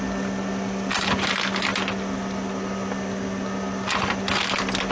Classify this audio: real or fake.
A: real